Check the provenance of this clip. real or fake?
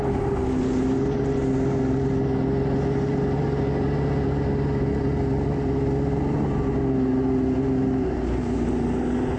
real